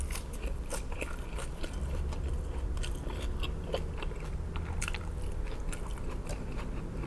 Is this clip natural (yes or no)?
no